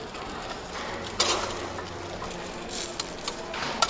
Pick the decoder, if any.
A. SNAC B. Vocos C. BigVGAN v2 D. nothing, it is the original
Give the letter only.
D